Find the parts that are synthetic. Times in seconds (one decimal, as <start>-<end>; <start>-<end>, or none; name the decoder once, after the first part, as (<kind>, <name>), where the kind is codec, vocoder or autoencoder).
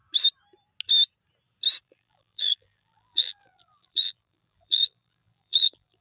1.8-6.0 (vocoder, BigVGAN v2)